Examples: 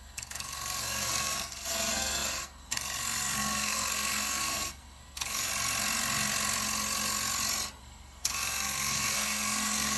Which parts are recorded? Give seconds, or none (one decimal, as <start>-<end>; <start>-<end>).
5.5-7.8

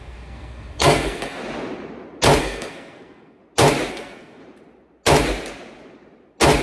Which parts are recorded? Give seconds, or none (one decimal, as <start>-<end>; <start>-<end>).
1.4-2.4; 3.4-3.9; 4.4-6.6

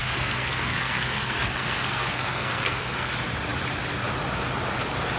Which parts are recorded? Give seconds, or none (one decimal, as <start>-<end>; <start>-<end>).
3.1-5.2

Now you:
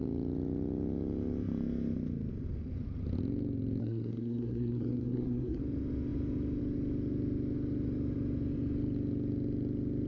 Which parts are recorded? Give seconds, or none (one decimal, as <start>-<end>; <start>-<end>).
0.0-3.8; 5.6-10.1

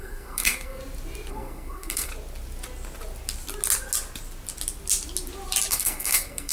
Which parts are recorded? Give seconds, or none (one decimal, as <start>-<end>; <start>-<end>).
0.8-1.3; 2.1-5.7

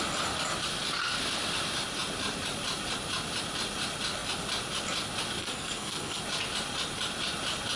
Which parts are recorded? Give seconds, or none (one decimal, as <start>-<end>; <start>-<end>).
0.0-5.4; 6.2-7.8

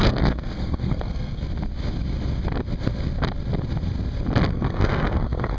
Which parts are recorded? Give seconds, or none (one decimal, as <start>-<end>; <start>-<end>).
1.4-4.5